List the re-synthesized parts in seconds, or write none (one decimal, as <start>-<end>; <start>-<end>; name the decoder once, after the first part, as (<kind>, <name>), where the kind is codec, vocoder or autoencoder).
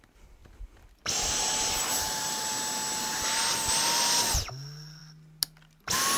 none